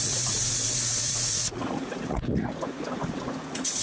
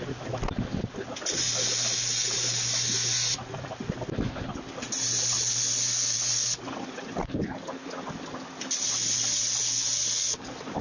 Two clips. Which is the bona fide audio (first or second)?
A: second